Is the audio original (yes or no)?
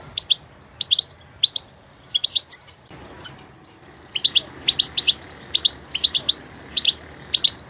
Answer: yes